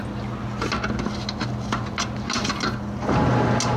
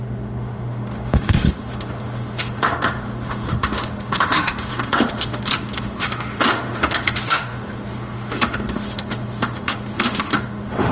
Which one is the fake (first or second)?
second